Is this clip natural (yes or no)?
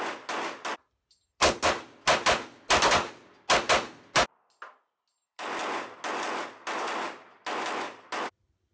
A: yes